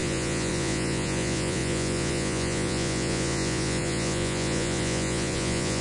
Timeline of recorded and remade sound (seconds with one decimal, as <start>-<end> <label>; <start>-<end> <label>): 0.0-5.8 remade